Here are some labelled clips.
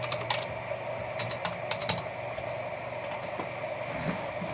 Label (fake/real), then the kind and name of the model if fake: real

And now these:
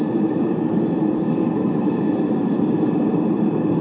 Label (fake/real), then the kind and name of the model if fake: fake, vocoder, BigVGAN v2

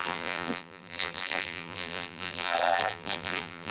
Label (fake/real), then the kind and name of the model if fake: fake, vocoder, BigVGAN v2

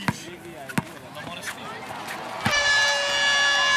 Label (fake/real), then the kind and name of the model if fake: real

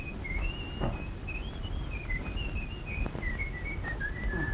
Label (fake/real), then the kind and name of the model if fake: fake, vocoder, BigVGAN v2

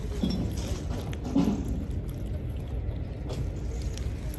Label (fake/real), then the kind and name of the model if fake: real